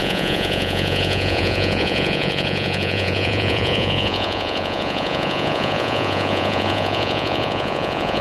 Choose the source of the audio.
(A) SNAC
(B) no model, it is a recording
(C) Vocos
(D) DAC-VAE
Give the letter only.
C